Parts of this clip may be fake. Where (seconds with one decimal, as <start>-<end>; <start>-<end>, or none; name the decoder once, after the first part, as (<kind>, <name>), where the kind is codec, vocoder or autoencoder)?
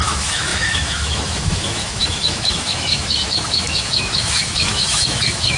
0.0-5.6 (autoencoder, DAC-VAE)